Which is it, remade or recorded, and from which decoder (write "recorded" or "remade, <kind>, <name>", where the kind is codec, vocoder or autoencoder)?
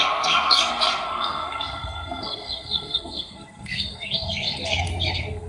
remade, codec, SNAC